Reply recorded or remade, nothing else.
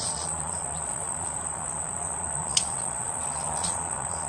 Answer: remade